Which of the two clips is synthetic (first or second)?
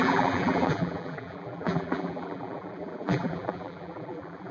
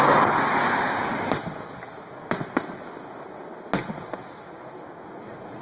first